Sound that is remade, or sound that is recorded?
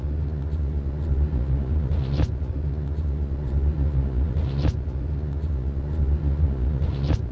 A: remade